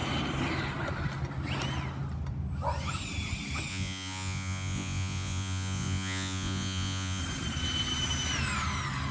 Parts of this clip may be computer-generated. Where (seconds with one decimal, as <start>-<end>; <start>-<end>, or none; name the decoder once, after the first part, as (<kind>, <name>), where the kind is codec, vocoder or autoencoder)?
3.7-7.2 (vocoder, Vocos)